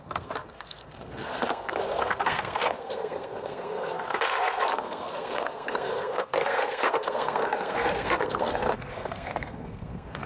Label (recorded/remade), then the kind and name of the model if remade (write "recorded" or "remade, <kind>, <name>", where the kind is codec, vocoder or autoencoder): remade, codec, SNAC